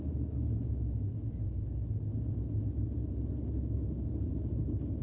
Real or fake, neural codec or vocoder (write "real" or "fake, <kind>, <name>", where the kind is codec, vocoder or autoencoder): real